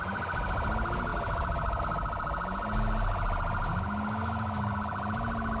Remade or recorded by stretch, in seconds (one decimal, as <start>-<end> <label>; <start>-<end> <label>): 0.0-3.6 recorded; 3.6-4.8 remade; 4.8-5.6 recorded